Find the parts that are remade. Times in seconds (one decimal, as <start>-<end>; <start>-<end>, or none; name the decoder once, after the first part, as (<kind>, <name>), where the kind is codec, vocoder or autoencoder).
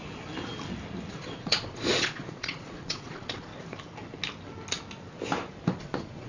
1.1-3.5 (vocoder, Vocos); 5.8-6.3